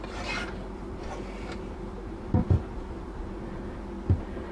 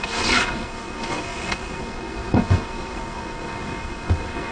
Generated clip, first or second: second